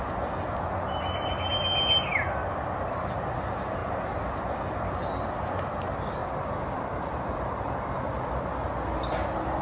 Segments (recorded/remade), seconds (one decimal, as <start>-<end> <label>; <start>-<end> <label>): 0.0-3.8 recorded; 3.8-4.9 remade; 4.9-6.2 recorded; 6.2-8.5 remade; 8.5-9.6 recorded